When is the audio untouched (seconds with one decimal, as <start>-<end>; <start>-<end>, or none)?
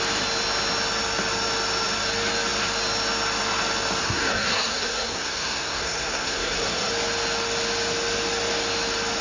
0.0-4.0; 6.9-9.2